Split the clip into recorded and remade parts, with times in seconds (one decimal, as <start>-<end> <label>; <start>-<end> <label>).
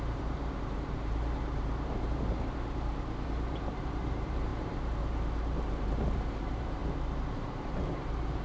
0.0-6.8 remade; 6.8-7.3 recorded; 7.3-8.4 remade